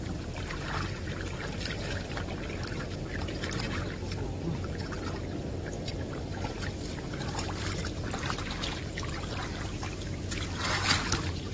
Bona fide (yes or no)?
no